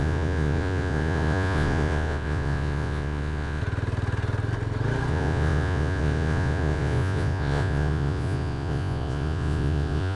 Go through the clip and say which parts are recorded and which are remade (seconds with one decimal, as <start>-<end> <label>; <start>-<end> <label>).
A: 0.0-3.6 remade; 3.6-5.1 recorded; 5.1-10.2 remade